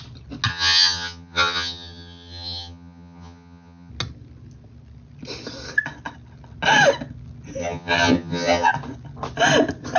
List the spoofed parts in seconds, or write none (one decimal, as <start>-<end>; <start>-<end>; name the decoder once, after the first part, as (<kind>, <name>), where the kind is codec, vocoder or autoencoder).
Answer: 0.5-3.9 (vocoder, HiFi-GAN); 7.6-8.7